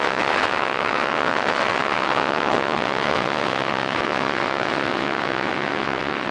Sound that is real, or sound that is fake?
fake